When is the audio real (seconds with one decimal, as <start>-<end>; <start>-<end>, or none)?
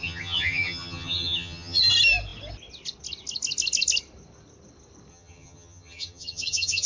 1.8-5.1